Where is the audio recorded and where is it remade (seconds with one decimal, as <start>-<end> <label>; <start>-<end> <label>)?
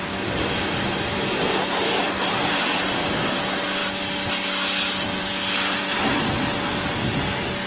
0.0-7.7 recorded